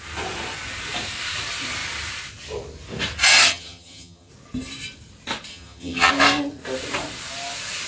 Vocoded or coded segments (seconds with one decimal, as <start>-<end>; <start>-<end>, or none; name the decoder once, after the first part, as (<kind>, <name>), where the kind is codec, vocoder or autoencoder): 3.5-4.3 (vocoder, HiFi-GAN); 5.5-6.1